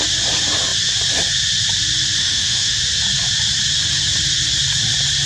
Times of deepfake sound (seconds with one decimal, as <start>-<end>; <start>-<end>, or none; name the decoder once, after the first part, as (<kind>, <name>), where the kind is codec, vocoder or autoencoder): 2.2-2.8 (autoencoder, DAC-VAE)